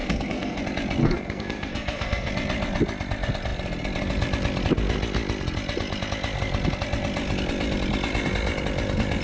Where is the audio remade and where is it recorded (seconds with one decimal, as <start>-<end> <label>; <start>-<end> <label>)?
0.0-0.6 remade; 0.6-1.0 recorded; 1.0-2.3 remade; 2.3-9.2 recorded